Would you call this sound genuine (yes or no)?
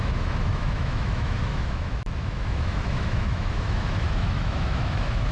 no